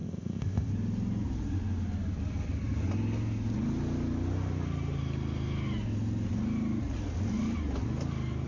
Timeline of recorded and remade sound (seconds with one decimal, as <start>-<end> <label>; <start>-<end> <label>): 0.0-0.7 remade; 0.7-8.5 recorded